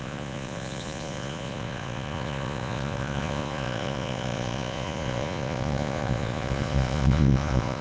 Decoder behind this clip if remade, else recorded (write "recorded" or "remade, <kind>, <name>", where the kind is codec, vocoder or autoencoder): remade, vocoder, Vocos